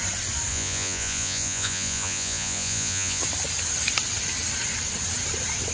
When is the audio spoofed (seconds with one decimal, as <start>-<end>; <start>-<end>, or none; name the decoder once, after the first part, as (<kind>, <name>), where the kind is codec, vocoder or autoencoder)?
0.5-3.2 (vocoder, Vocos)